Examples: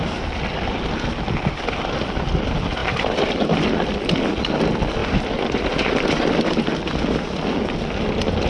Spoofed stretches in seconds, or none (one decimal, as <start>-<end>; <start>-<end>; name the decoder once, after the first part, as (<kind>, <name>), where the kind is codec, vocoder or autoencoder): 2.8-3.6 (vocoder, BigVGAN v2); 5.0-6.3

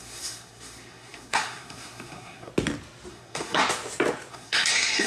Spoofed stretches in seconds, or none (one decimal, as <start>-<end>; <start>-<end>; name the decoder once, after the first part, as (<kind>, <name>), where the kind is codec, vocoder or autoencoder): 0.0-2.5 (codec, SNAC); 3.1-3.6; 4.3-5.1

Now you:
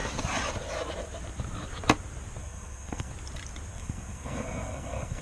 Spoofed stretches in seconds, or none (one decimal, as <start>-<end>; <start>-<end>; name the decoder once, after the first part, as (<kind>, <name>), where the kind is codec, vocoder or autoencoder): 2.4-3.1 (codec, SNAC); 3.7-5.2

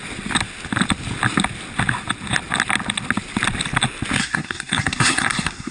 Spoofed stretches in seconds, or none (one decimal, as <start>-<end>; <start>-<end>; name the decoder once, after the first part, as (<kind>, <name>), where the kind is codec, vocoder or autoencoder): 4.2-5.7 (codec, SNAC)

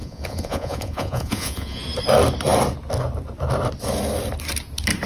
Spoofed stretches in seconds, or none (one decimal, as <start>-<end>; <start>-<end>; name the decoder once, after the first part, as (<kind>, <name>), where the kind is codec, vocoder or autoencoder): 0.0-1.8 (vocoder, Vocos)

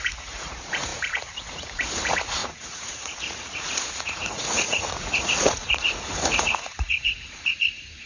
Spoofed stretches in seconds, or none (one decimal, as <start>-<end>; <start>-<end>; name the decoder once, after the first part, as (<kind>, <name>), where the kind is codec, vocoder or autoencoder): 0.0-8.1 (vocoder, Vocos)